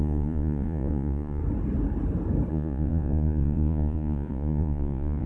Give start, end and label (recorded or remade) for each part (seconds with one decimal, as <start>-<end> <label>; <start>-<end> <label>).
0.0-1.4 remade; 1.4-2.5 recorded; 2.5-5.3 remade